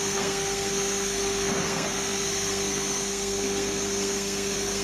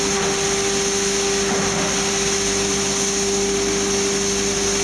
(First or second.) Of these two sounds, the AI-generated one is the first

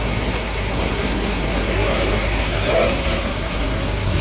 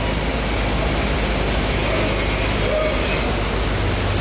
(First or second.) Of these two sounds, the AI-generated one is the first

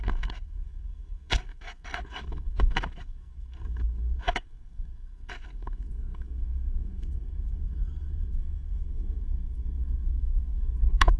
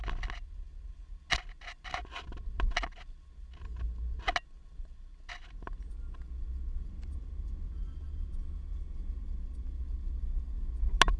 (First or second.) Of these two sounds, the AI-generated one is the first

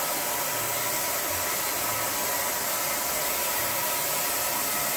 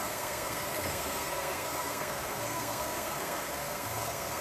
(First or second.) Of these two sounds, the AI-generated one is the second